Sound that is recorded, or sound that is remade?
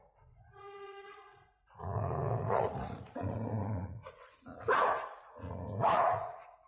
remade